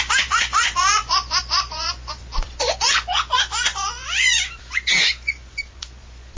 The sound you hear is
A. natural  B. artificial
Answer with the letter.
B